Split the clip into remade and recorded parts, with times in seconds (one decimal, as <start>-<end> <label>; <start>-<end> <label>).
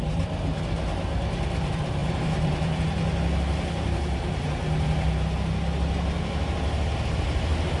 0.0-2.0 recorded; 2.0-2.8 remade; 2.8-7.8 recorded